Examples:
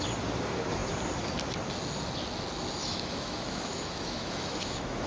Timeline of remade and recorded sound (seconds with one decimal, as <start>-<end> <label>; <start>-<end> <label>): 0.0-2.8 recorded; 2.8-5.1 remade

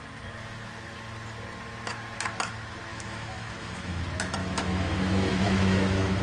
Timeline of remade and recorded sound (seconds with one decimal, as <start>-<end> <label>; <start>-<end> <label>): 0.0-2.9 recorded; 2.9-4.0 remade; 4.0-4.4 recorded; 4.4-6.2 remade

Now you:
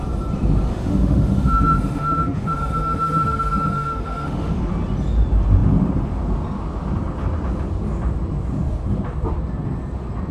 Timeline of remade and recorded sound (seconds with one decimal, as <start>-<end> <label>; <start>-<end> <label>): 0.0-0.7 recorded; 0.7-4.6 remade; 4.6-10.3 recorded

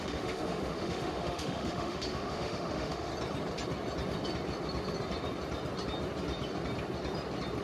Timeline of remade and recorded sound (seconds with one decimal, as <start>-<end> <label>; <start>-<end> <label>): 0.0-3.1 remade; 3.1-7.6 recorded

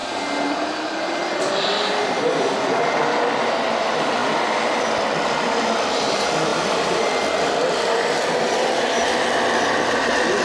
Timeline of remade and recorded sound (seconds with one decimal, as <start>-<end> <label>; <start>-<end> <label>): 0.0-10.4 recorded